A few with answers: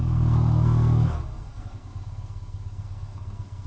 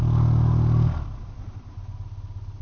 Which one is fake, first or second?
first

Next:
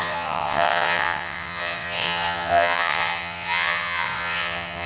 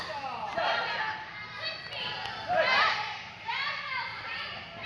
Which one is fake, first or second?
first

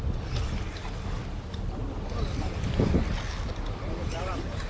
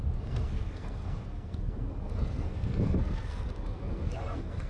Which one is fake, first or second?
second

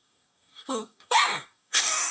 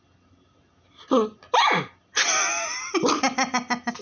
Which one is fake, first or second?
first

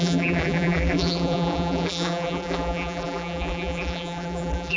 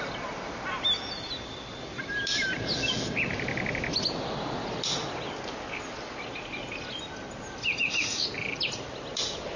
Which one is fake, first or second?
first